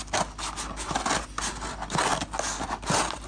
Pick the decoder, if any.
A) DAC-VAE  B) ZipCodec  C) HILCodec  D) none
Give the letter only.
D